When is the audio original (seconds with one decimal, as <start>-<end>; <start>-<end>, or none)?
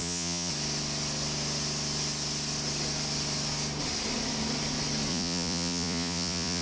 0.5-5.1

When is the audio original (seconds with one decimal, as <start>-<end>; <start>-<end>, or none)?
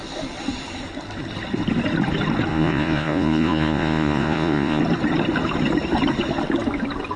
0.0-2.5; 4.8-7.2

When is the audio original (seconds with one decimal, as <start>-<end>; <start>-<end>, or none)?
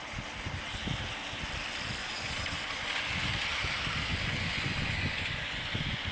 0.0-2.0; 3.1-4.1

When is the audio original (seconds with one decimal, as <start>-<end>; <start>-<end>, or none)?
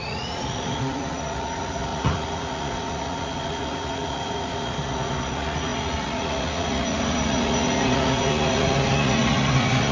none